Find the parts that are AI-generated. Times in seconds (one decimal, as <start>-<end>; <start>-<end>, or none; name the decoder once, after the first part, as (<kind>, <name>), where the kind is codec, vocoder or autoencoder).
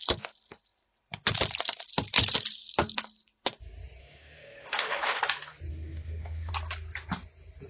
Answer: 4.0-5.2 (autoencoder, DAC-VAE); 5.7-6.5